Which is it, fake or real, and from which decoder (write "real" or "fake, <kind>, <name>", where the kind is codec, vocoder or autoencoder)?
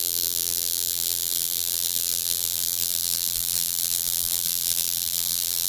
fake, vocoder, BigVGAN v2